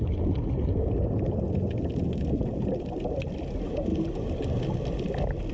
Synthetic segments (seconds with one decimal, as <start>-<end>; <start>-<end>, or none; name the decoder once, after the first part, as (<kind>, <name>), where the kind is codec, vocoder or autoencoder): none